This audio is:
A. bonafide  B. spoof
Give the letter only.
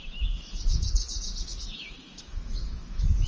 B